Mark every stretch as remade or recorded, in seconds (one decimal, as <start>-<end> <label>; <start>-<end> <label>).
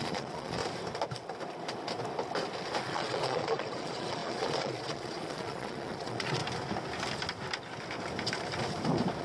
0.0-0.6 remade; 0.6-2.8 recorded; 2.8-6.4 remade; 6.4-9.2 recorded